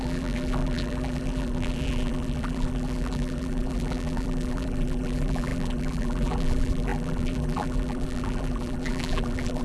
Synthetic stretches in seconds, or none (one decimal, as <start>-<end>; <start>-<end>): 0.0-9.6